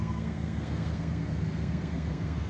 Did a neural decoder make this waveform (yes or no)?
yes